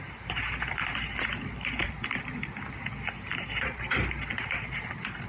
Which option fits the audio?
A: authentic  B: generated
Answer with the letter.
A